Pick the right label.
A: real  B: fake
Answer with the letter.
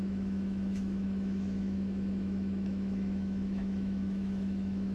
B